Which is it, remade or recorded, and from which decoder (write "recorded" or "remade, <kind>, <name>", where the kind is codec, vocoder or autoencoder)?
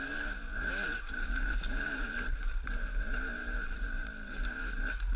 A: remade, vocoder, BigVGAN v2